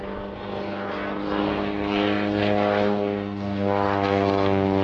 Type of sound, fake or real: fake